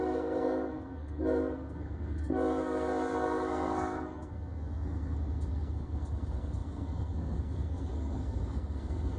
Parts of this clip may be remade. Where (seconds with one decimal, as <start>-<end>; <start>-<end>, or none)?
0.0-9.2